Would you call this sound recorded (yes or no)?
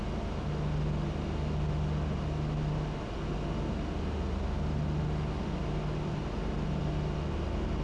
yes